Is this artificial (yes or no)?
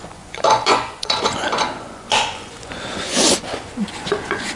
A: yes